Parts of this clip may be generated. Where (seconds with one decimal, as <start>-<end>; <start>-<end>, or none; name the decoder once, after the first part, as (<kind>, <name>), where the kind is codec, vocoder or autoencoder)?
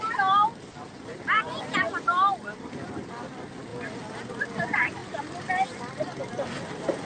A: none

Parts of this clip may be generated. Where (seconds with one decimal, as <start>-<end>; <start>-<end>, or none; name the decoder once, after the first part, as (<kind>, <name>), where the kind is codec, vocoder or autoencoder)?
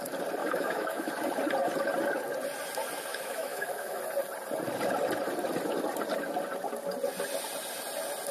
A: 0.4-1.1 (autoencoder, DAC-VAE); 3.1-4.0